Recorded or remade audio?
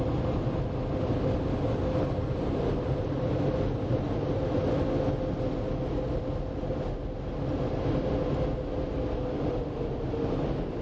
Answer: recorded